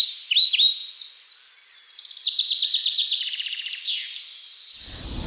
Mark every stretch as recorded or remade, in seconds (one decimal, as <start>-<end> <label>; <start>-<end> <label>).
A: 0.0-5.3 recorded

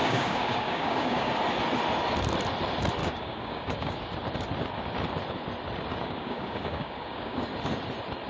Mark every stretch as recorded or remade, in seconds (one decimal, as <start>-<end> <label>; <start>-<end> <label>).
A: 0.0-1.3 remade; 1.3-3.0 recorded; 3.0-4.0 remade; 4.0-5.9 recorded; 5.9-7.5 remade; 7.5-8.3 recorded

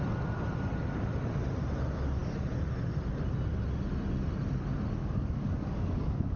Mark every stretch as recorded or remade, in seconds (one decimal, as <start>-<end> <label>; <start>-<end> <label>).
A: 0.0-5.0 recorded; 5.0-6.4 remade

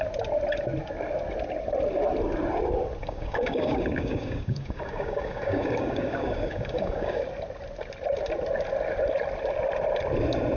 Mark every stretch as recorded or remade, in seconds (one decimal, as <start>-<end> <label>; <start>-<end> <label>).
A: 0.0-3.0 recorded; 3.0-7.2 remade; 7.2-10.6 recorded

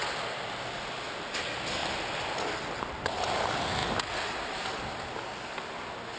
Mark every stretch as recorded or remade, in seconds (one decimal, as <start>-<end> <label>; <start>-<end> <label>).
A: 0.0-6.2 recorded